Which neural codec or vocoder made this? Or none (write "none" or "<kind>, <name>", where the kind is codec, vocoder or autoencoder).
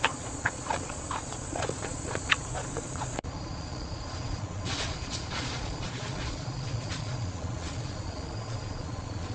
vocoder, Vocos